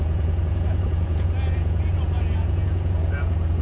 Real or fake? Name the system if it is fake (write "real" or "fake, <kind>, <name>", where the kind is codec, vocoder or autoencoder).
fake, vocoder, Vocos